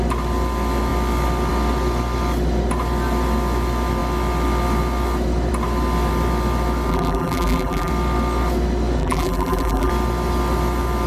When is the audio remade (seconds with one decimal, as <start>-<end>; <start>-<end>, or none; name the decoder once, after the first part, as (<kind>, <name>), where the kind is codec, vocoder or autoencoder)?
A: 6.9-7.9 (vocoder, BigVGAN v2); 9.0-9.9